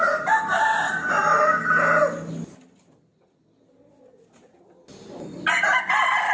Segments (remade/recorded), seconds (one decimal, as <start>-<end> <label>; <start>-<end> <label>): 0.0-6.3 recorded